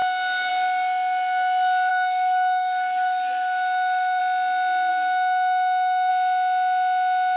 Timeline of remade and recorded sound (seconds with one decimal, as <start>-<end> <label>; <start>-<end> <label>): 0.0-1.9 recorded; 1.9-4.2 remade; 4.2-4.9 recorded; 4.9-6.1 remade; 6.1-7.4 recorded